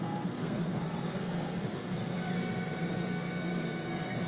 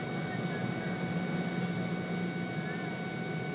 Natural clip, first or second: second